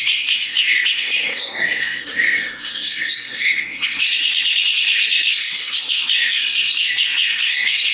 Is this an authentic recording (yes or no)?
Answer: no